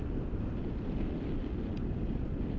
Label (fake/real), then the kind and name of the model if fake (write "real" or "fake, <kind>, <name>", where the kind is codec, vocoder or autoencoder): real